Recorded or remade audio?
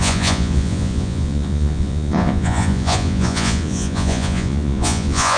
remade